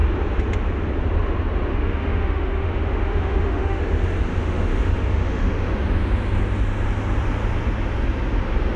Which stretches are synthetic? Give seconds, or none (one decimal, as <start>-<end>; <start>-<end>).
1.7-3.8; 4.3-5.8

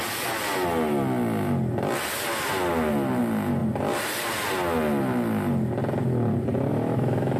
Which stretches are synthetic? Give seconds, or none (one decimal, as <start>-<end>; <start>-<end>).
6.7-7.4

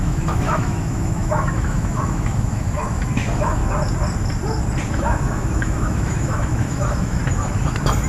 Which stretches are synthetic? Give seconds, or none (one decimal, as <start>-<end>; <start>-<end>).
0.0-3.6; 4.9-7.2